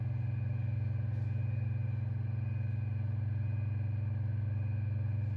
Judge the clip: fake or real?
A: real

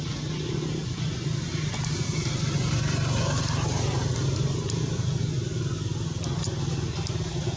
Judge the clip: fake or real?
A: real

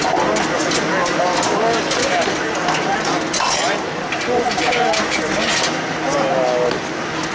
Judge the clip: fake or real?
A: real